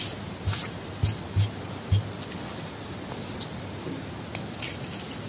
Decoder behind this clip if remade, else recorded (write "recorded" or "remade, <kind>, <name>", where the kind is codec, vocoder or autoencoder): recorded